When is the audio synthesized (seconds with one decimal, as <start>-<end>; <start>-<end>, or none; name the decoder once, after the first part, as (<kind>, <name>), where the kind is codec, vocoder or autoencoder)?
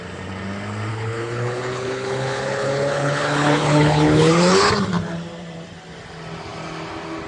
0.9-4.7 (codec, HILCodec)